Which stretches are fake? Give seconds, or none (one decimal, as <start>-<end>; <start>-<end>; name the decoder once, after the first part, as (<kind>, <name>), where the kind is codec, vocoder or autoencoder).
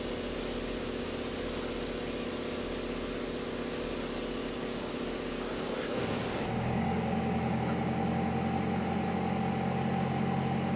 4.4-7.6 (codec, DAC)